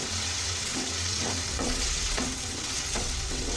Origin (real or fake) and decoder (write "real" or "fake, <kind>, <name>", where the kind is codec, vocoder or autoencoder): fake, vocoder, WaveNeXt